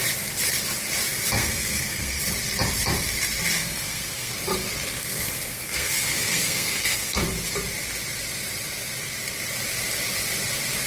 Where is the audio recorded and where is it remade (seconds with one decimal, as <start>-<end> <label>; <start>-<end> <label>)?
0.0-1.4 recorded; 1.4-2.2 remade; 2.2-3.6 recorded; 3.6-4.3 remade; 4.3-4.9 recorded; 4.9-7.2 remade; 7.2-10.9 recorded